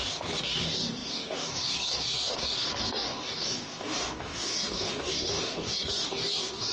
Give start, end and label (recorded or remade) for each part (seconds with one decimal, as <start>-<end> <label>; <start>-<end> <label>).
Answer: 0.0-6.7 remade